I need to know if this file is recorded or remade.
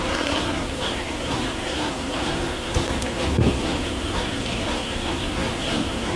remade